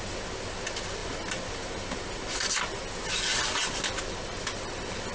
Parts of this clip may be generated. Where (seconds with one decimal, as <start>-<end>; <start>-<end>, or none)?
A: none